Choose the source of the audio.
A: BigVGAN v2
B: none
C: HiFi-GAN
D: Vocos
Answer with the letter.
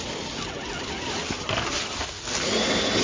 B